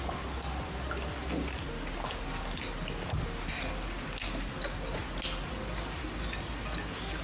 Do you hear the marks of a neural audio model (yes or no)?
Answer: no